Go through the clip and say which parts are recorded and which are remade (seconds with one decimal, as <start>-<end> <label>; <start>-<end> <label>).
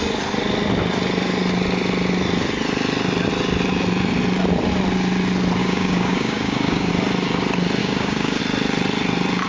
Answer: 0.0-5.6 recorded; 5.6-6.9 remade; 6.9-7.8 recorded; 7.8-8.4 remade; 8.4-9.5 recorded